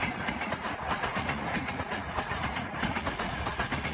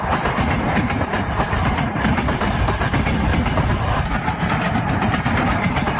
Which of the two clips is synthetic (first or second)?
first